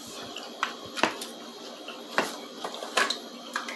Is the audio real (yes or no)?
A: no